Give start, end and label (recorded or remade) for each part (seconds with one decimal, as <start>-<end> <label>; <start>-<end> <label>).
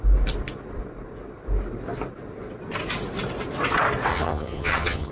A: 0.0-4.1 recorded; 4.1-5.1 remade